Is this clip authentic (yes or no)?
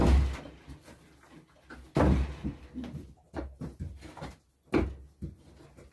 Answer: yes